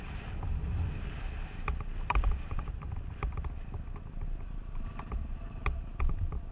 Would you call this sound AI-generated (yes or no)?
no